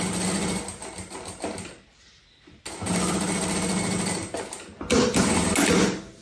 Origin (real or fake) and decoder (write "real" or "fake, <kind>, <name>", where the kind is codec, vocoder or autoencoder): real